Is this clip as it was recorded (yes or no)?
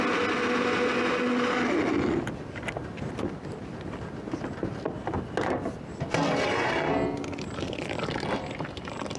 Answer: yes